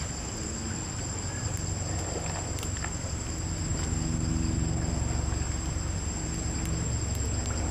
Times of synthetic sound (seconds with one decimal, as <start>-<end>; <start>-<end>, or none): none